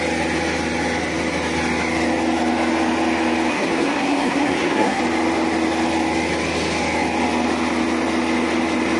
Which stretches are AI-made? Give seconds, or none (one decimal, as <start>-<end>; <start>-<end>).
3.5-5.0